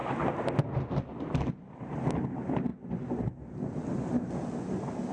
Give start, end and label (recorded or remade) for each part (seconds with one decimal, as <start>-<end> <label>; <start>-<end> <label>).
0.0-2.7 recorded; 2.7-4.3 remade; 4.3-5.1 recorded